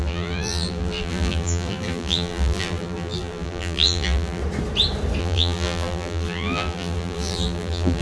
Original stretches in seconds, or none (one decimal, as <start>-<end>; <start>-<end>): 4.4-5.2